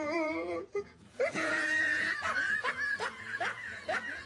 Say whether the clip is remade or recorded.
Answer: remade